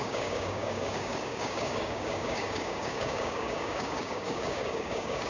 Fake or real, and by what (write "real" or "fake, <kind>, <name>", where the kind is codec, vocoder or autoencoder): fake, codec, DAC